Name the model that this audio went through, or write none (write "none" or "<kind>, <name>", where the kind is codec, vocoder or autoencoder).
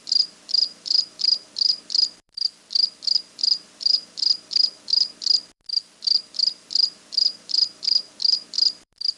vocoder, BigVGAN v2